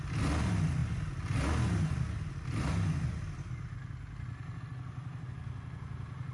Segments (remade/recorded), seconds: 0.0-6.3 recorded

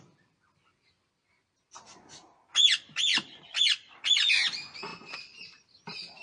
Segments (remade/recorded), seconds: 0.0-3.1 recorded; 3.1-3.6 remade; 3.6-6.2 recorded

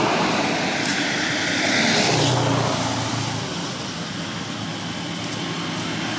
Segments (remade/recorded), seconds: 0.0-6.2 recorded

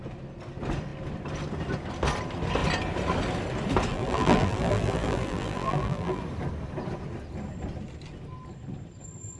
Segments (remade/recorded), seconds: 0.0-3.9 recorded; 3.9-6.2 remade; 6.2-9.4 recorded

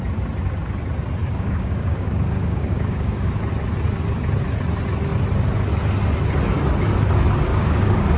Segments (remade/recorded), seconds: 0.0-1.2 recorded; 1.2-3.3 remade; 3.3-7.5 recorded; 7.5-8.2 remade